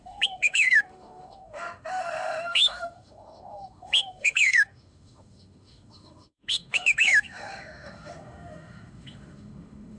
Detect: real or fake fake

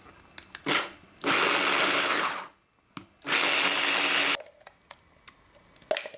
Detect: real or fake real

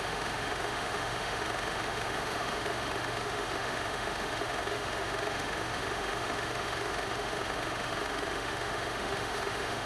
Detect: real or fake fake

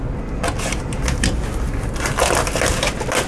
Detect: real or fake real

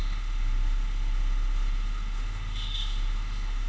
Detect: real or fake fake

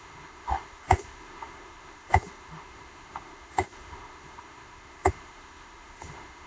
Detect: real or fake fake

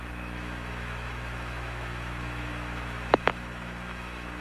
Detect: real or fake fake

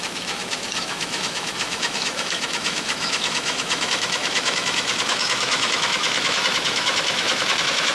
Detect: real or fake fake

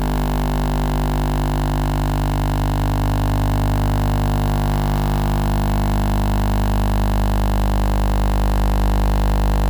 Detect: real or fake real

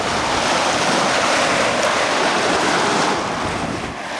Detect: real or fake real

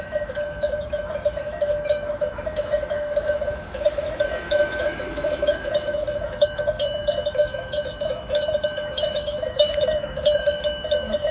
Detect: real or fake fake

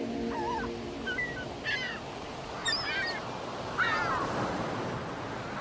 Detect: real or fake real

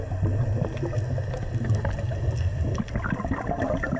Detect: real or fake real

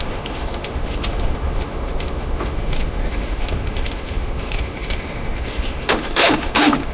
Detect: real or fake fake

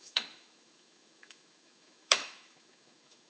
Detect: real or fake fake